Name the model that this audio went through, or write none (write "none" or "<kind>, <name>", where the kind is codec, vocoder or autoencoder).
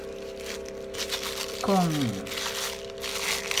none